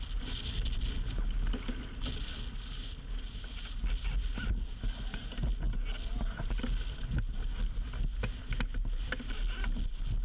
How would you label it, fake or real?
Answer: real